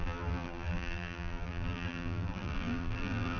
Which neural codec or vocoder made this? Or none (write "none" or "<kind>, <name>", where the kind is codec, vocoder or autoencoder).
vocoder, BigVGAN v2